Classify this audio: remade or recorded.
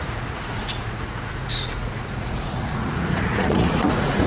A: remade